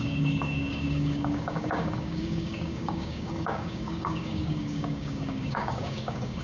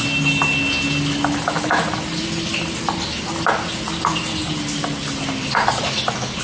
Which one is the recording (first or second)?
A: second